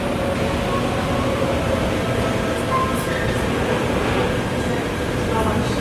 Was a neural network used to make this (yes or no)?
no